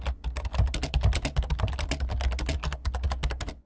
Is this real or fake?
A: real